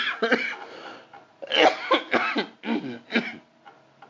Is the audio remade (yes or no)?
no